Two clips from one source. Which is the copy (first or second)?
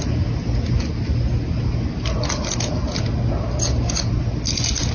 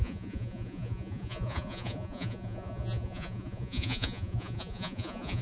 second